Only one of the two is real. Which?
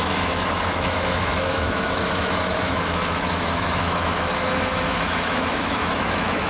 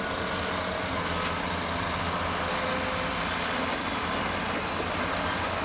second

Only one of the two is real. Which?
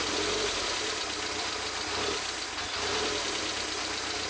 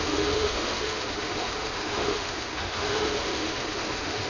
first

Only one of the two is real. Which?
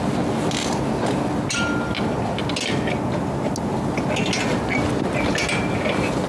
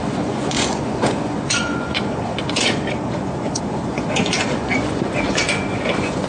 first